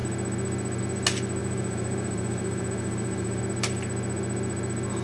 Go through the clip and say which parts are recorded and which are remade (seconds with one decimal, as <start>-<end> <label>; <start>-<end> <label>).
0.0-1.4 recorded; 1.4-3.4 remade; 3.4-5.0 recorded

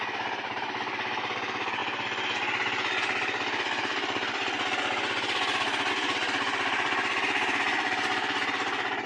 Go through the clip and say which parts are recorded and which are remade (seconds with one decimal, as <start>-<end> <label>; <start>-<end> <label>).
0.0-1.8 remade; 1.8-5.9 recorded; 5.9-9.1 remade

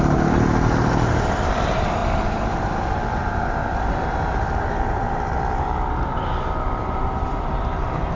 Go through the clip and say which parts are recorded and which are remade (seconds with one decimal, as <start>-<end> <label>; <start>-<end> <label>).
0.0-8.2 remade

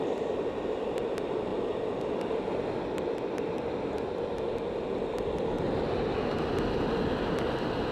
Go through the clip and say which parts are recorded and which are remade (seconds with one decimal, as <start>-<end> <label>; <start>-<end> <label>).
0.0-7.9 recorded

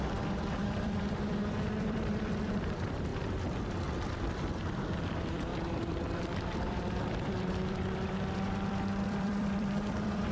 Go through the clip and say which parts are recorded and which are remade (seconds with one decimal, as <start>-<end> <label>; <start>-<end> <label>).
0.0-3.1 remade; 3.1-5.0 recorded; 5.0-5.5 remade; 5.5-6.2 recorded; 6.2-10.3 remade

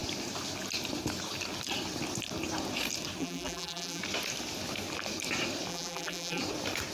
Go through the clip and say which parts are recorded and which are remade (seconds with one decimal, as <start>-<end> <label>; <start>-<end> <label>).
0.0-3.2 recorded; 3.2-4.0 remade; 4.0-5.7 recorded; 5.7-6.4 remade; 6.4-6.9 recorded

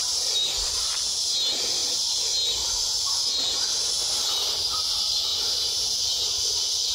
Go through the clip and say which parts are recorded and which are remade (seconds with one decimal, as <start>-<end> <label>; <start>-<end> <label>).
0.0-1.8 remade; 1.8-4.3 recorded; 4.3-5.3 remade; 5.3-6.2 recorded; 6.2-6.9 remade